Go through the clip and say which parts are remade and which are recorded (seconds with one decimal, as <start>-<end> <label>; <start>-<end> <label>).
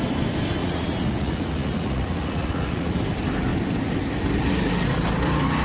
0.0-0.6 recorded; 0.6-3.0 remade; 3.0-5.6 recorded